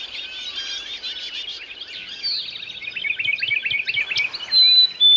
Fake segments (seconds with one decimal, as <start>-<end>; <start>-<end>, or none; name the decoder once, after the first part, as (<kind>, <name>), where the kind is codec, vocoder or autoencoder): none